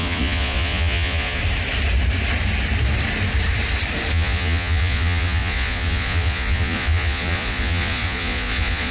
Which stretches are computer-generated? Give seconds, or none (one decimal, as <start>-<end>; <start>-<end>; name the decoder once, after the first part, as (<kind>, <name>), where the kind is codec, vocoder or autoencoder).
0.0-1.4 (vocoder, Vocos); 4.1-8.9